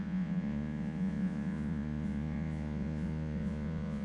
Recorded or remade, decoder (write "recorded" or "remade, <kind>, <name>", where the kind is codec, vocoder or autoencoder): remade, vocoder, Vocos